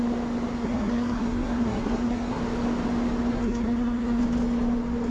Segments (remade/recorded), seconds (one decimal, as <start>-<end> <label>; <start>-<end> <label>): 0.0-0.6 recorded; 0.6-2.4 remade; 2.4-3.3 recorded; 3.3-4.2 remade; 4.2-5.1 recorded